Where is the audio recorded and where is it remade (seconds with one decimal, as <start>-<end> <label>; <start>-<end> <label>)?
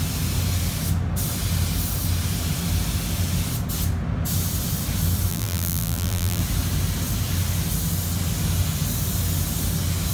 0.0-5.3 recorded; 5.3-6.4 remade; 6.4-10.1 recorded